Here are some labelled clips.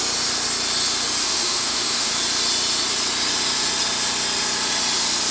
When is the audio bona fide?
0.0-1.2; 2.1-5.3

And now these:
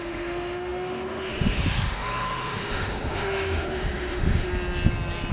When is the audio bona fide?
4.5-5.3

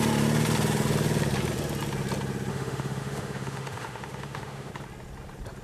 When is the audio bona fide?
0.0-2.5; 4.7-5.6

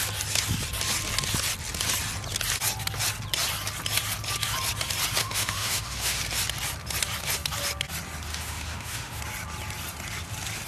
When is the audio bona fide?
0.0-5.2; 6.2-8.3; 9.2-10.7

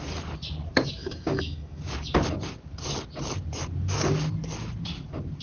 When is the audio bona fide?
0.0-1.0; 1.8-5.4

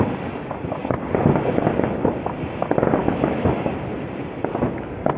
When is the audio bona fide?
0.0-3.0; 3.7-5.2